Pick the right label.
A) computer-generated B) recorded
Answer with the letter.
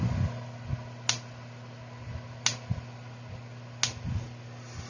B